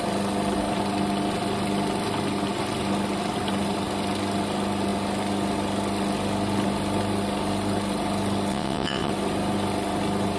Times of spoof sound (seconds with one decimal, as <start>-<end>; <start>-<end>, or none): 8.5-9.1